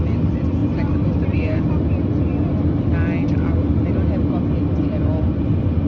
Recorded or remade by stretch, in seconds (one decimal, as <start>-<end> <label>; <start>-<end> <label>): 0.0-0.6 recorded; 0.6-1.7 remade; 1.7-5.9 recorded